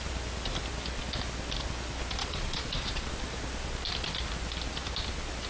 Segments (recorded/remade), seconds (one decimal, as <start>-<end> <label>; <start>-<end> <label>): 0.0-2.2 recorded; 2.2-3.1 remade; 3.1-5.5 recorded